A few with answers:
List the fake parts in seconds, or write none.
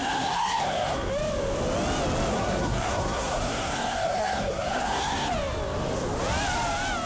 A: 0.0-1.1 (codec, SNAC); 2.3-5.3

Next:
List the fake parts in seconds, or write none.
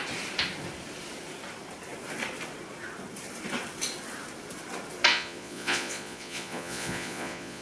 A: 5.1-7.6 (vocoder, Vocos)